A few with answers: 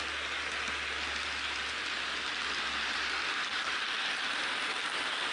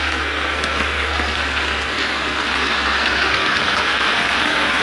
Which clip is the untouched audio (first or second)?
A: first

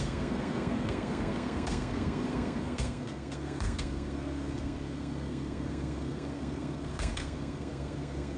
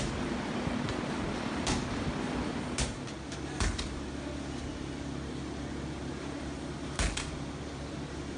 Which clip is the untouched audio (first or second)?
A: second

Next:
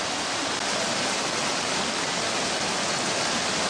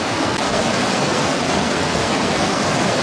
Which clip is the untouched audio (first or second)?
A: first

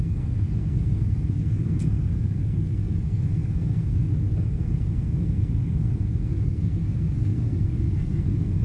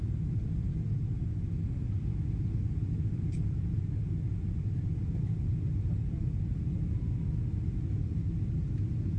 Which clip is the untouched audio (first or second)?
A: second